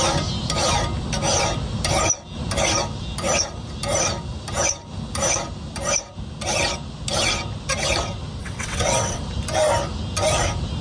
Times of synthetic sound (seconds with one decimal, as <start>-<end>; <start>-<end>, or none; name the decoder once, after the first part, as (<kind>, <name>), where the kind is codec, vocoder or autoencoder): 8.4-9.2 (vocoder, WaveNeXt)